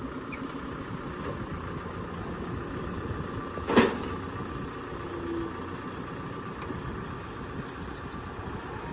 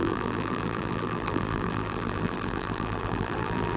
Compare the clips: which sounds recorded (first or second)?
first